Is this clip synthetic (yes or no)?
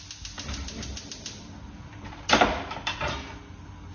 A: no